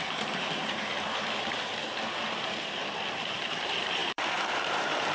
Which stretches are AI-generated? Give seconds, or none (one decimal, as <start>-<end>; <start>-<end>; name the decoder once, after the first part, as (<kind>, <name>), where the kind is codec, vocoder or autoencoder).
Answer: 0.0-0.9 (vocoder, BigVGAN v2); 3.3-5.1